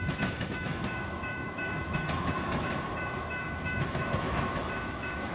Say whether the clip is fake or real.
fake